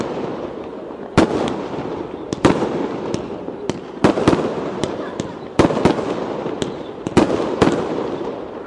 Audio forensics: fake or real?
real